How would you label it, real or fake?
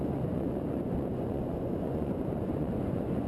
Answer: fake